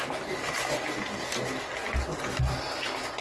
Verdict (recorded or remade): recorded